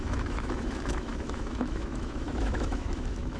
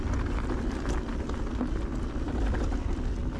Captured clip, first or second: second